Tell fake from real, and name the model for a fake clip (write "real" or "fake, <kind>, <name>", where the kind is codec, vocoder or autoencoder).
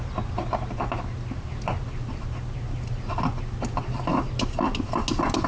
real